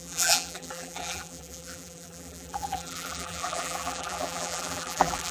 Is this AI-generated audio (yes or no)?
yes